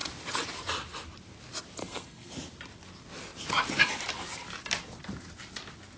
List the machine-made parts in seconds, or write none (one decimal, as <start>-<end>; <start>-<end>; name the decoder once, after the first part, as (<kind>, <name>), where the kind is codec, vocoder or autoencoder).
1.8-2.3 (codec, SNAC)